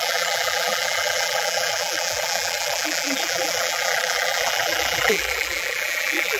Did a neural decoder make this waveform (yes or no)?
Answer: yes